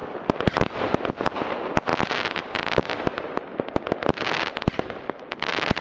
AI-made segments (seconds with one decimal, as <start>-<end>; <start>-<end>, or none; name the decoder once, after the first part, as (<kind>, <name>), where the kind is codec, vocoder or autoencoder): none